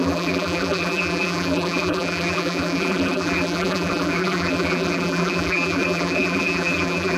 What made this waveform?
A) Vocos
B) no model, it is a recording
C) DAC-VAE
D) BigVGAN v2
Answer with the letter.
D